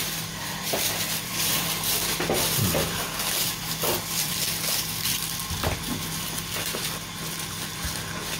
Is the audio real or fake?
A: fake